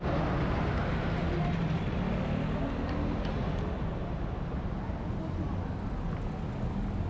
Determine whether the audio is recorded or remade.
recorded